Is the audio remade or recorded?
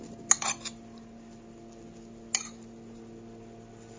recorded